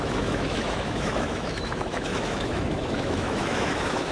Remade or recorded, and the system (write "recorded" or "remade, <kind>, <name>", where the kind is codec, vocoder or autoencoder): remade, autoencoder, DAC-VAE